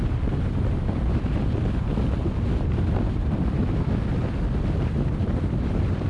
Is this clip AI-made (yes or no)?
no